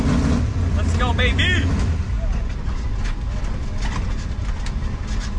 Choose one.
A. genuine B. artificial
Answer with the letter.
A